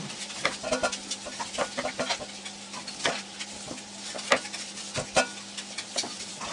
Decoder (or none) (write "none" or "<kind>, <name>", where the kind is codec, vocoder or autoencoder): none